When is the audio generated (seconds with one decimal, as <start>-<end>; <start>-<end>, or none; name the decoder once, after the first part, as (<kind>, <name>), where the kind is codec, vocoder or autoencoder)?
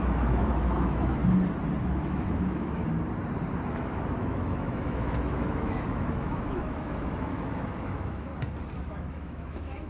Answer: 0.0-1.2 (autoencoder, DAC-VAE); 1.8-2.8; 3.7-8.3; 8.8-9.9